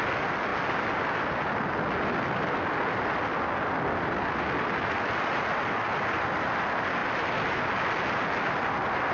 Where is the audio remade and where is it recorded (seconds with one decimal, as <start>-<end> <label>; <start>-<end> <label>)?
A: 0.0-9.1 recorded